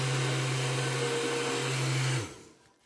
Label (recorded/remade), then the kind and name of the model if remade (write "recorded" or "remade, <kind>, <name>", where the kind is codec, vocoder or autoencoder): recorded